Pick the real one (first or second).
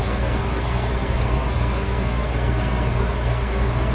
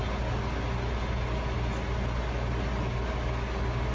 second